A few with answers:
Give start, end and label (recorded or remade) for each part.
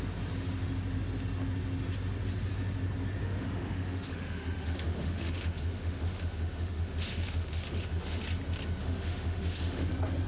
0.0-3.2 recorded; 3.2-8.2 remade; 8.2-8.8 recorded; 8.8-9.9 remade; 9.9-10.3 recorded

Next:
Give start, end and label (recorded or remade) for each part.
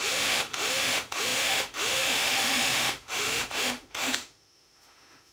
0.0-5.3 remade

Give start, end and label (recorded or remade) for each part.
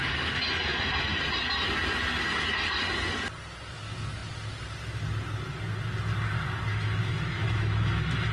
0.0-6.7 recorded; 6.7-8.3 remade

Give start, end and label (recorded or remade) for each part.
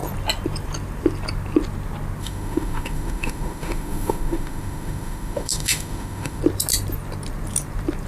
0.0-2.2 recorded; 2.2-6.4 remade; 6.4-8.1 recorded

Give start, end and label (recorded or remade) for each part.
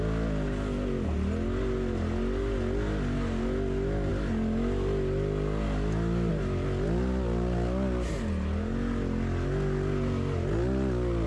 0.0-11.3 recorded